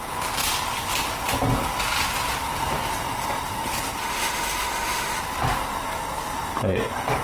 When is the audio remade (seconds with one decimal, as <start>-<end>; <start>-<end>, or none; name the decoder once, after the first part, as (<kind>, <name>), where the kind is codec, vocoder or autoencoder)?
4.0-5.2 (autoencoder, DAC-VAE)